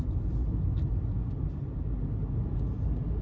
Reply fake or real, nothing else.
real